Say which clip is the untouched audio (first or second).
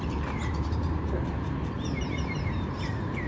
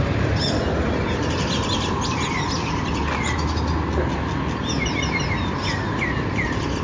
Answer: second